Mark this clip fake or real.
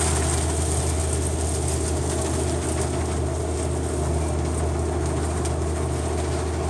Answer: real